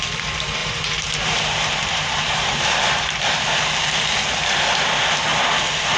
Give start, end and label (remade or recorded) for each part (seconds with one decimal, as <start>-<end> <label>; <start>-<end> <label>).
0.0-0.6 recorded; 0.6-3.3 remade; 3.3-6.0 recorded